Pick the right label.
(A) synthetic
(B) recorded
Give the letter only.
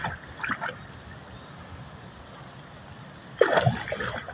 B